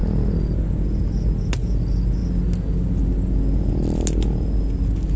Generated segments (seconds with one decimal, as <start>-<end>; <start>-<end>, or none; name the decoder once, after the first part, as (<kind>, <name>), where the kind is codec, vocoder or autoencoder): none